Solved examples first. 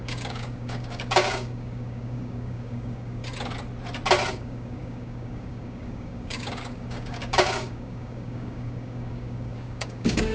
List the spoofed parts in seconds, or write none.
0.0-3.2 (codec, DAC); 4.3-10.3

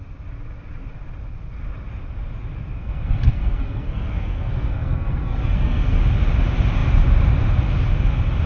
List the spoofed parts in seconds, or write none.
2.8-6.0 (codec, SNAC)

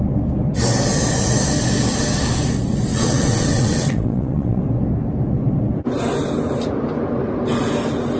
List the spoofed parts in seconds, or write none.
2.9-4.6 (vocoder, WaveNeXt)

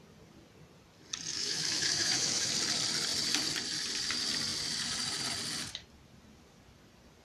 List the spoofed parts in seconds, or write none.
1.3-2.5 (autoencoder, DAC-VAE)

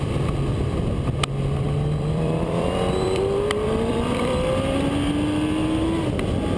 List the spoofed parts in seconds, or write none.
0.0-0.5 (vocoder, BigVGAN v2); 1.6-4.3